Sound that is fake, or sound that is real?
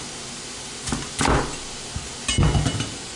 real